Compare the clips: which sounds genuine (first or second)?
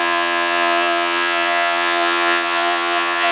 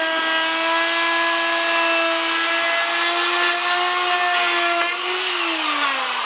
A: second